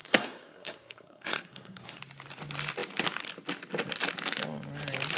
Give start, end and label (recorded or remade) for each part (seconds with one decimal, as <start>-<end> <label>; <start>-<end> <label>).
0.0-2.0 remade; 2.0-5.2 recorded